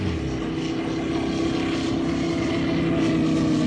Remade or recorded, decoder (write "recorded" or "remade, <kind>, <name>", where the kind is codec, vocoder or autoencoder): recorded